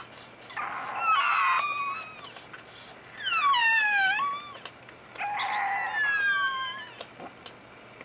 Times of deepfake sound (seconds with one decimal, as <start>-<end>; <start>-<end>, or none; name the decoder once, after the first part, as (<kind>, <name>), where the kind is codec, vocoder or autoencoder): none